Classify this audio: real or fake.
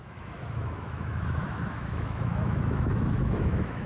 fake